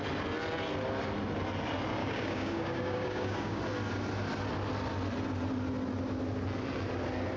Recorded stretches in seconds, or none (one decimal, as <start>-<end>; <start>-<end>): 0.0-2.0; 3.6-7.4